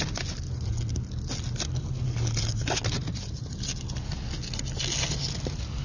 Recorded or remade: recorded